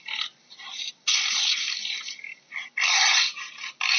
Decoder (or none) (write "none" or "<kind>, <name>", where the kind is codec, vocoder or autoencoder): none